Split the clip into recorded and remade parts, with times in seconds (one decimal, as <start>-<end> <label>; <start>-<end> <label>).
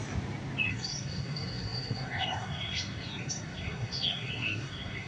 0.0-0.7 recorded; 0.7-5.1 remade